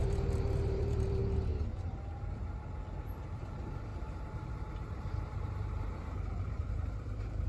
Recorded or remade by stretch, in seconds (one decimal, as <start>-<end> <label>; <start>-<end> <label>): 0.0-1.2 remade; 1.2-3.3 recorded; 3.3-7.5 remade